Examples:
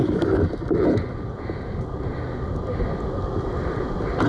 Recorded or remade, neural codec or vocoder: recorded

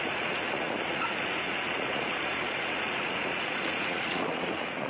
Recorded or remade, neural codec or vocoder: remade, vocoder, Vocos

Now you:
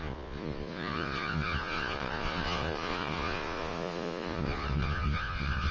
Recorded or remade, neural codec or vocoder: remade, vocoder, Vocos